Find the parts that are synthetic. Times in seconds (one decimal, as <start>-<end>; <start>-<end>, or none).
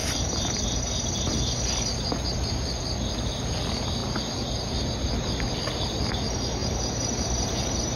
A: 0.0-0.8; 6.6-7.5